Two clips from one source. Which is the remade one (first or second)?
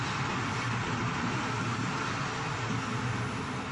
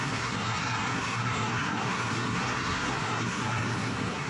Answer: second